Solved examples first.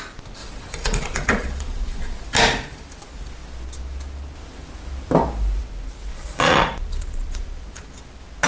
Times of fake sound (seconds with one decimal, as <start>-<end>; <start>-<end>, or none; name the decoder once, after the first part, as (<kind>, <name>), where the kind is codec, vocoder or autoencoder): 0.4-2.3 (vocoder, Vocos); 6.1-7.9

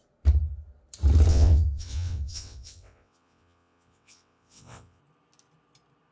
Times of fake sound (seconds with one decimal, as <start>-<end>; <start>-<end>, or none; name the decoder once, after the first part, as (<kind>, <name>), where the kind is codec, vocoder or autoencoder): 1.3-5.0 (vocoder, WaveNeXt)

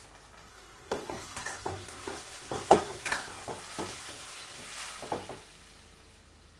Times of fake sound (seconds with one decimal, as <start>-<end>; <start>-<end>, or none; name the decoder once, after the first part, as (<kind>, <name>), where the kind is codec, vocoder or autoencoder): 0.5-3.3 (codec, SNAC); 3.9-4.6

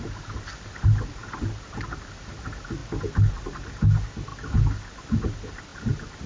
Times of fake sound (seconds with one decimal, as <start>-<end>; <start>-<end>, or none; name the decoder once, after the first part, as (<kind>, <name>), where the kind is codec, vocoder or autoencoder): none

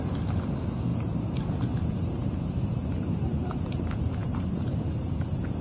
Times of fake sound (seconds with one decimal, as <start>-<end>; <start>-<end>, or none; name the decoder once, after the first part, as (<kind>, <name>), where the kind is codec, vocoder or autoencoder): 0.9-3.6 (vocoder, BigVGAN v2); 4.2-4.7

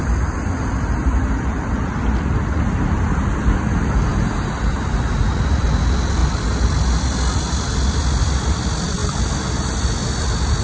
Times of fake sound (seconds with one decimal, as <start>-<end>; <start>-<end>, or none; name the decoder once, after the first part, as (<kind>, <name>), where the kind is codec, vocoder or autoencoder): 0.0-9.0 (vocoder, BigVGAN v2); 9.5-10.6

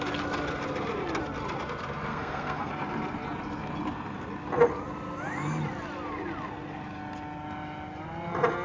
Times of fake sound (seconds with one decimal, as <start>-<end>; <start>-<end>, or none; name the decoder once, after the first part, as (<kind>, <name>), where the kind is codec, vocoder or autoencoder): 2.1-2.7 (codec, SNAC)